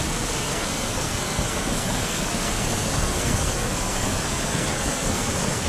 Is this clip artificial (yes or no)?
yes